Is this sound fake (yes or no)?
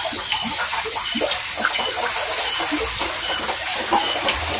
no